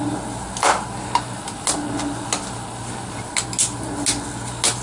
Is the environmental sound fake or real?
real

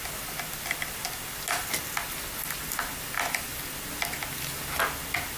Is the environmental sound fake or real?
real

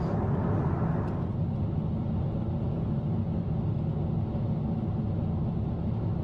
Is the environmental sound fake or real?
real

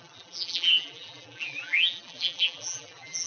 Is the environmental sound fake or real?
fake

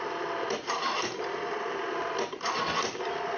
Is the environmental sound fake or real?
real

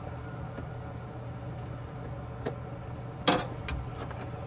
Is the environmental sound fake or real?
real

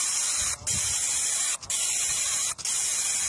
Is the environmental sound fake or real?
real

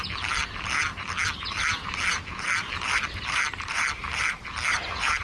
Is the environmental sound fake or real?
fake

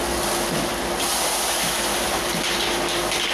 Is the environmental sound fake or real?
real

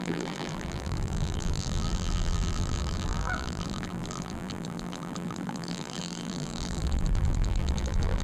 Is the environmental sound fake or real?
fake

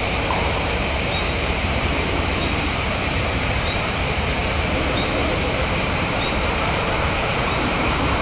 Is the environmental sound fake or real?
fake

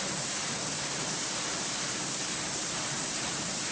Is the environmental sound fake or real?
fake